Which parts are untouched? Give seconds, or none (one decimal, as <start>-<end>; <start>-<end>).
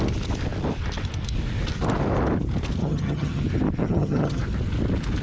0.0-2.8; 3.4-3.8; 4.4-5.2